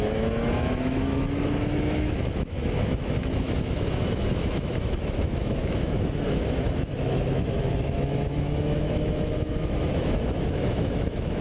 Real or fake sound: fake